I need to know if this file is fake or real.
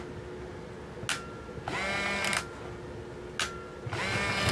real